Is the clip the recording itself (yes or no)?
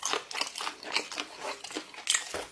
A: yes